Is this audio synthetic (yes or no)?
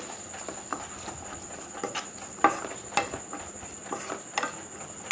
no